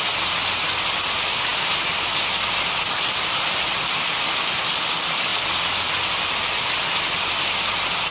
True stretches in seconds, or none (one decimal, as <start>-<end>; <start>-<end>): 0.0-8.1